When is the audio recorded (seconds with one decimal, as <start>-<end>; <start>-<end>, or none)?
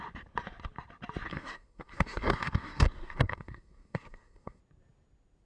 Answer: 0.0-1.3; 4.6-5.5